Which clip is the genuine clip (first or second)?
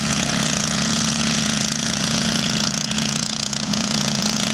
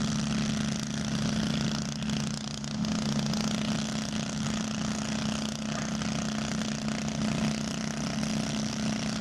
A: second